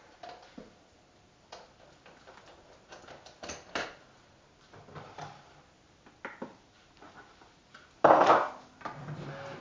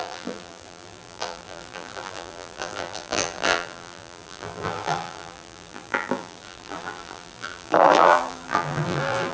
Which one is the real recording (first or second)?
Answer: first